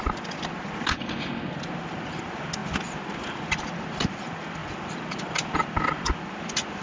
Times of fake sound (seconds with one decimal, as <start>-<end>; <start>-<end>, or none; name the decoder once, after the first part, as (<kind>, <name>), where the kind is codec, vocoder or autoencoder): none